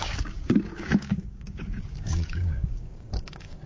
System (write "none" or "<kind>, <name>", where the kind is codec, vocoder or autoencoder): codec, DAC